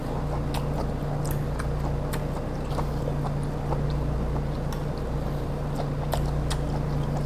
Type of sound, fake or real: real